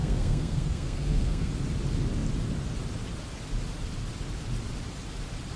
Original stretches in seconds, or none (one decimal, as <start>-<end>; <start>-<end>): 1.5-5.6